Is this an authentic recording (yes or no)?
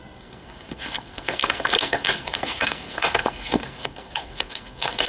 no